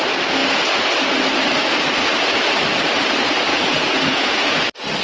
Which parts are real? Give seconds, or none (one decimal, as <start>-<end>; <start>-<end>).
0.0-3.5; 4.6-5.0